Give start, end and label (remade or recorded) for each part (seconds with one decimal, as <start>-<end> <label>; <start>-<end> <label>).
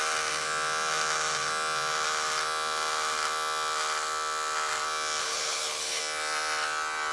0.0-5.2 recorded; 5.2-6.0 remade; 6.0-7.1 recorded